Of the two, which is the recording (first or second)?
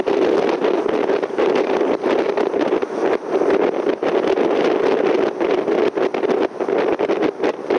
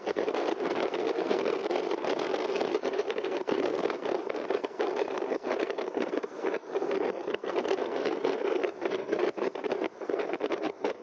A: first